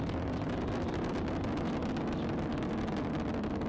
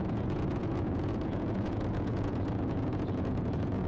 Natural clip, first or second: first